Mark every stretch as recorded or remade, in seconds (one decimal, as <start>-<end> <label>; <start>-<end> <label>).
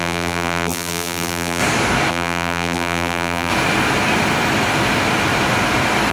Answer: 0.0-1.6 remade; 1.6-2.1 recorded; 2.1-3.5 remade; 3.5-6.1 recorded